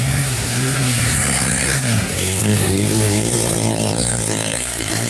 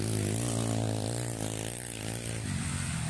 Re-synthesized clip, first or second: first